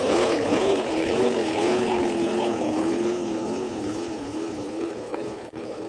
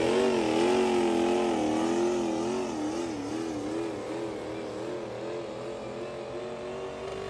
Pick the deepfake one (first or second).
first